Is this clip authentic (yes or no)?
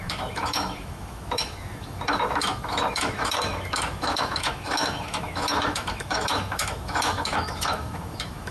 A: no